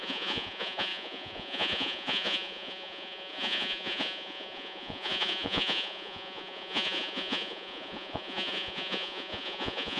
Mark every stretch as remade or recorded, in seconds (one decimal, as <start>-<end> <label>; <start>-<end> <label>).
0.0-10.0 remade